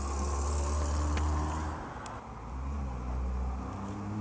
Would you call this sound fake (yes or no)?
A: no